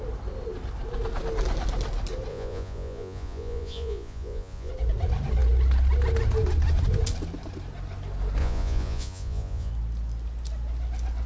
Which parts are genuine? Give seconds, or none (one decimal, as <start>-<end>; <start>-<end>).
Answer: 0.0-2.3; 4.7-8.4; 9.7-11.3